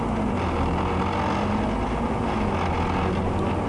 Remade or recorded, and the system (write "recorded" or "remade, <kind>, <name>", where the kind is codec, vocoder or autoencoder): recorded